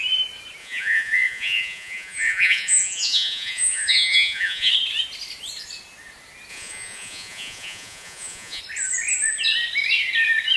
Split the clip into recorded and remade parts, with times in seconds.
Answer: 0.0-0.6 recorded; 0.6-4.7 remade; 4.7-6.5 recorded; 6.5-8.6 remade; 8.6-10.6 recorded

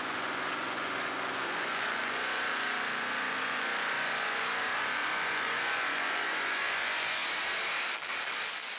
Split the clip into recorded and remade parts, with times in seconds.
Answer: 0.0-7.2 remade; 7.2-8.8 recorded

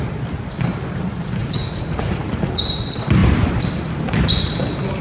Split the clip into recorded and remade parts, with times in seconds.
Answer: 0.0-1.4 recorded; 1.4-2.6 remade; 2.6-5.0 recorded

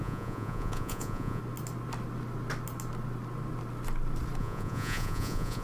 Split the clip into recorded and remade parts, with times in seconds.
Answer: 0.0-1.4 remade; 1.4-4.4 recorded; 4.4-5.6 remade

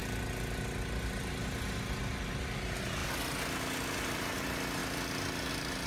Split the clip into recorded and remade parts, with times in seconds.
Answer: 0.0-5.9 recorded

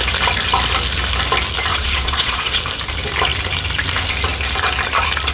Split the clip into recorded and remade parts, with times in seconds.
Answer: 0.0-1.7 recorded; 1.7-2.6 remade; 2.6-5.3 recorded